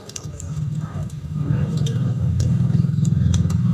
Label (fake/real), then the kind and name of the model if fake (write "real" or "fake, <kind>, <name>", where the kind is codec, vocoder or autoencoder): fake, codec, DAC